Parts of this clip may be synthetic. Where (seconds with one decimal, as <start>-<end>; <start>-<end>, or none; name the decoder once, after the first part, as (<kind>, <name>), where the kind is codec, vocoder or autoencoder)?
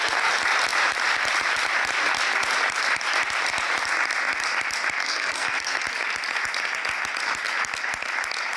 5.0-5.8 (codec, SNAC)